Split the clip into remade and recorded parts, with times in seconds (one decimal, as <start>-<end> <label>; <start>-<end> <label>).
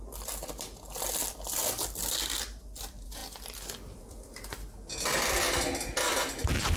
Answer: 0.0-6.8 recorded